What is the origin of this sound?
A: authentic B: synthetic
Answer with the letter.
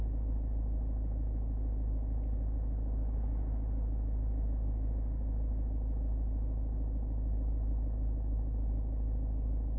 A